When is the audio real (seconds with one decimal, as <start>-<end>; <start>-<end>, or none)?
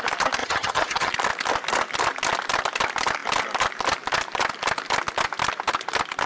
0.0-0.4; 1.1-6.3